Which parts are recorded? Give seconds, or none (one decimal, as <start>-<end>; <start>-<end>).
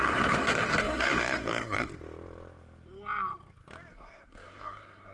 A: 1.9-3.9